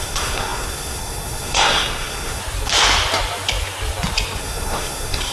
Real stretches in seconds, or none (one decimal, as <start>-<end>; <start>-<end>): 2.4-4.4